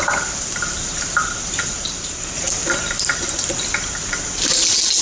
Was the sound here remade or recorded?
recorded